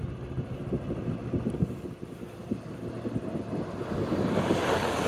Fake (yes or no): no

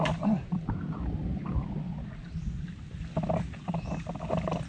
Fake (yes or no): no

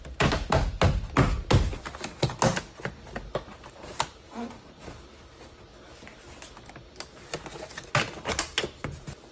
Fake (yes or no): no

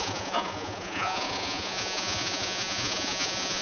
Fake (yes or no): yes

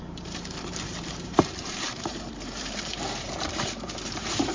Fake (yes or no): yes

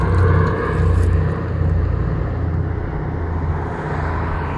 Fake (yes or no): no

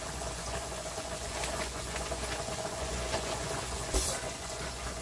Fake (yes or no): yes